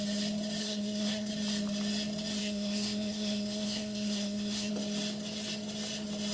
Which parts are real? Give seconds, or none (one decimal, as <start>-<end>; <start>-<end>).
0.0-0.6; 1.3-2.4; 4.7-6.3